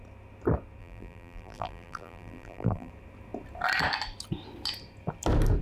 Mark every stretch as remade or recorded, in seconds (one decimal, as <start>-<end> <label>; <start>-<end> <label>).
0.0-0.8 recorded; 0.8-2.9 remade; 2.9-5.6 recorded

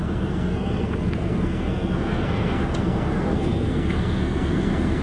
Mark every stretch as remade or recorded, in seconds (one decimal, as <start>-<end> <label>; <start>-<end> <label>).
0.0-5.0 remade

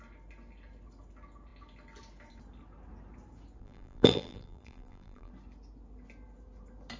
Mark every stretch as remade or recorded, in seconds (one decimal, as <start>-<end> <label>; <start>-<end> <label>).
0.0-3.6 recorded; 3.6-5.3 remade; 5.3-7.0 recorded

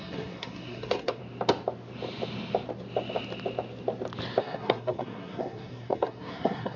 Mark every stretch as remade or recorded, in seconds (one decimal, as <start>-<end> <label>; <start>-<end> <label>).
0.0-1.2 remade; 1.2-4.4 recorded; 4.4-6.8 remade

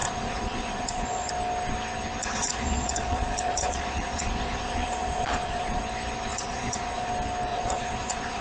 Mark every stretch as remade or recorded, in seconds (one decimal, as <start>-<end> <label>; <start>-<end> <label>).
0.0-1.3 remade; 1.3-2.2 recorded; 2.2-5.8 remade; 5.8-6.3 recorded; 6.3-7.1 remade; 7.1-7.5 recorded; 7.5-8.4 remade

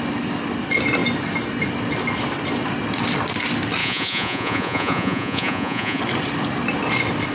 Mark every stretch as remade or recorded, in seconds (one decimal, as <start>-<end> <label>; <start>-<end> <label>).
0.0-3.8 recorded; 3.8-6.0 remade; 6.0-7.3 recorded

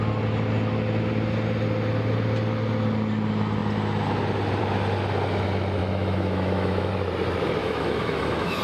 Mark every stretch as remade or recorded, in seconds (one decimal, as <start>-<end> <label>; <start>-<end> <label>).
0.0-5.8 recorded; 5.8-6.9 remade; 6.9-7.6 recorded; 7.6-8.6 remade